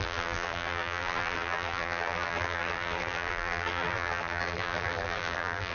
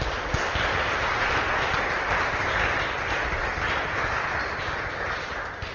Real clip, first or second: second